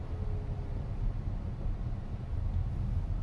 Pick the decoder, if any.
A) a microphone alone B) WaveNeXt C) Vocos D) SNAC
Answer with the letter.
A